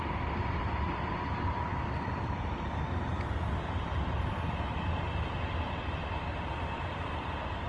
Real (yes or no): yes